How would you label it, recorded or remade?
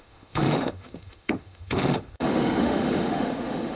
remade